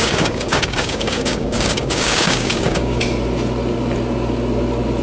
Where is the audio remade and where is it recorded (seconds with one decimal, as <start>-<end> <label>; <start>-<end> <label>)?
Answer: 0.0-3.0 remade; 3.0-5.0 recorded